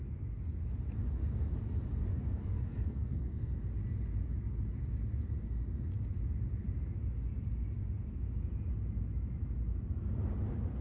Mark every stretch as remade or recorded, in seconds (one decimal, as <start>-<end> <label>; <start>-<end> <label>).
0.0-2.1 recorded; 2.1-3.5 remade; 3.5-10.8 recorded